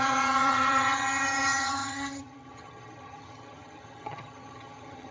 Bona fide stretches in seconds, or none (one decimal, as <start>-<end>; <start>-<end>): none